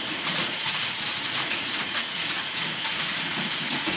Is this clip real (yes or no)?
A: no